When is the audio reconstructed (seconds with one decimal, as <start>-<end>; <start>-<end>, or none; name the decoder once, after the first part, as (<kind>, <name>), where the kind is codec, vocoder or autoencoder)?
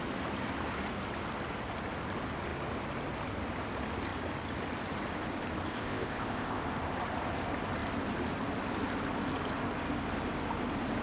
5.7-6.6 (codec, ZipCodec)